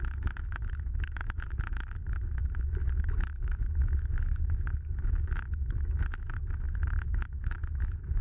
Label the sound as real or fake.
fake